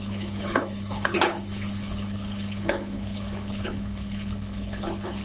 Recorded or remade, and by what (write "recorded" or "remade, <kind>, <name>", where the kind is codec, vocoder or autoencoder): remade, codec, HILCodec